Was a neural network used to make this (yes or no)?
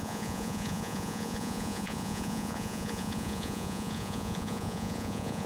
yes